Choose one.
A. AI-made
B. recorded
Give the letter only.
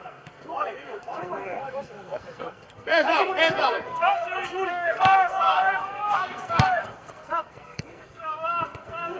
A